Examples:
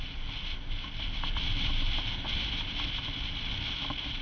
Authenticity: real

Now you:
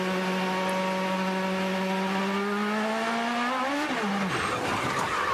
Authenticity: real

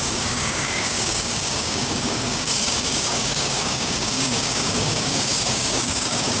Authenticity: fake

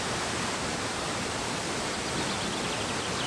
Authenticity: real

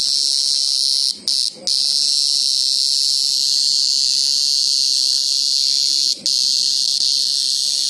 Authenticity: real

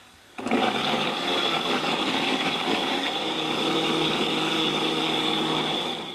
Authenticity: fake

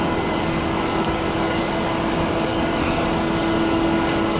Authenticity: fake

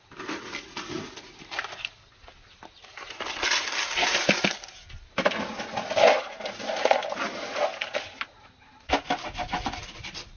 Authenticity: real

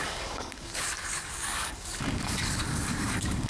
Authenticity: fake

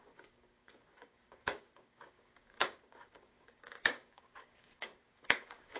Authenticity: fake